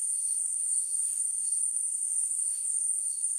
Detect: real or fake fake